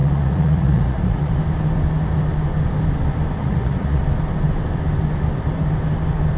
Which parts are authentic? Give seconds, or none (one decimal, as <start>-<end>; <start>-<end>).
1.3-3.4; 4.0-6.4